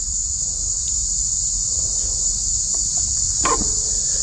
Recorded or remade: recorded